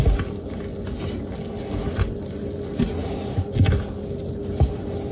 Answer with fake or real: real